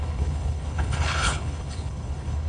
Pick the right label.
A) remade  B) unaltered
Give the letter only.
A